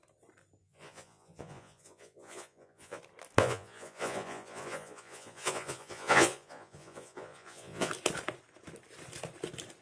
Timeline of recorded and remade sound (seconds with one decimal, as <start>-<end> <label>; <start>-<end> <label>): 0.0-0.6 recorded; 0.6-3.0 remade; 3.0-3.4 recorded; 3.4-7.9 remade; 7.9-9.8 recorded